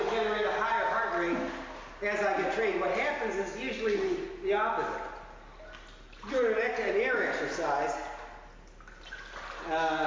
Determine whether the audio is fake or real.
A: real